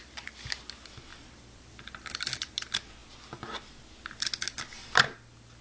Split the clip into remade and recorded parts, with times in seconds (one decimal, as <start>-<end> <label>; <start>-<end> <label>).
0.0-1.1 recorded; 1.1-1.8 remade; 1.8-5.6 recorded